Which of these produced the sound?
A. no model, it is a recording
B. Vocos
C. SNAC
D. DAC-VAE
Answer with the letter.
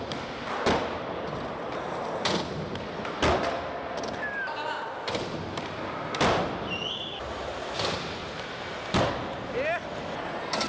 A